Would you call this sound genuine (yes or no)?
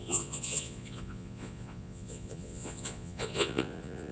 no